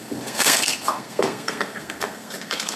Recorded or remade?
remade